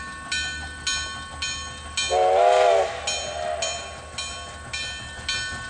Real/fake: real